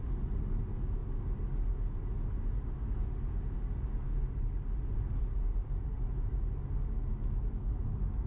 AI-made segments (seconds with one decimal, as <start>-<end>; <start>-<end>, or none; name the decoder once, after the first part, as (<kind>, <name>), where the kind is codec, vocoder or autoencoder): none